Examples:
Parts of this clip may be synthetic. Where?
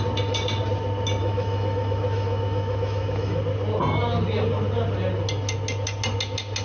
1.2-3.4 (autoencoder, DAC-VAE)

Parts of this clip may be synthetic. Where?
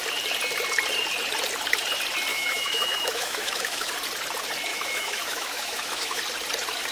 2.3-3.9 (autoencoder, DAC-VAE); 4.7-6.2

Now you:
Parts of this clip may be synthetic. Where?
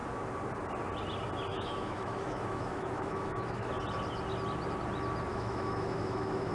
1.5-3.7 (autoencoder, DAC-VAE); 5.3-6.5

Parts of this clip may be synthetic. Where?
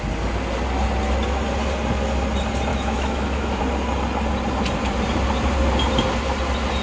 2.7-3.6 (autoencoder, DAC-VAE)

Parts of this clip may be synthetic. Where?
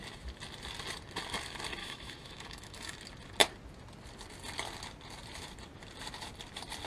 1.8-3.0 (autoencoder, DAC-VAE)